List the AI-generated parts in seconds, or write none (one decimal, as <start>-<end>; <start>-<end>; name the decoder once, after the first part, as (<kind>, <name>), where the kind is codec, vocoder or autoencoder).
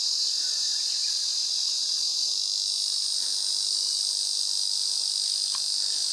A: 0.0-2.3 (vocoder, Vocos)